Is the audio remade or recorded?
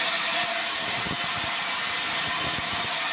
recorded